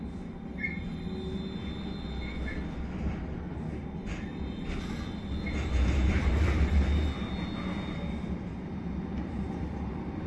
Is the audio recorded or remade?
recorded